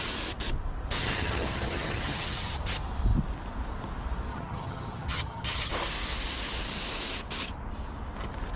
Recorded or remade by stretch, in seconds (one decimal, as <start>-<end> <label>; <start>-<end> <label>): 0.0-1.0 recorded; 1.0-2.5 remade; 2.5-4.3 recorded; 4.3-5.7 remade; 5.7-8.6 recorded